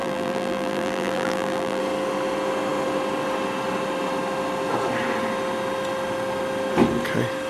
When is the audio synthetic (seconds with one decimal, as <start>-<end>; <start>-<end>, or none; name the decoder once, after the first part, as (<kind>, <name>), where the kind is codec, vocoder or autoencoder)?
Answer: 0.0-1.8 (vocoder, BigVGAN v2)